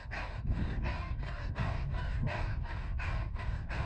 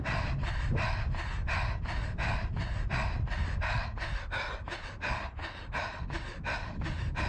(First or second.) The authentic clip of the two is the second